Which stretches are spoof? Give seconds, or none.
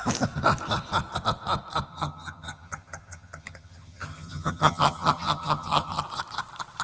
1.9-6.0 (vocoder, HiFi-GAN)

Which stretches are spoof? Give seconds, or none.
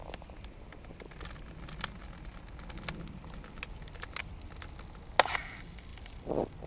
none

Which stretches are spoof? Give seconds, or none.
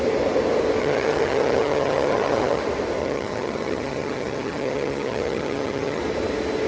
0.8-2.6 (vocoder, HiFi-GAN); 3.0-6.0